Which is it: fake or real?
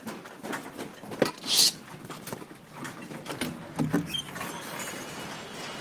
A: real